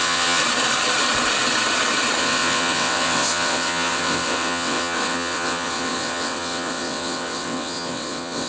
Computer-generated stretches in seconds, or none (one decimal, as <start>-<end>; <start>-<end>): 0.0-0.4; 2.2-8.5